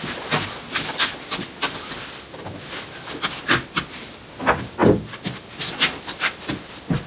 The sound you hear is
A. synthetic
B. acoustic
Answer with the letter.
B